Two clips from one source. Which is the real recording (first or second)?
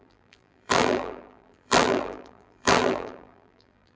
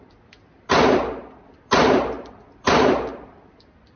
second